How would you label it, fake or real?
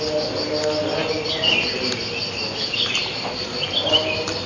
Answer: real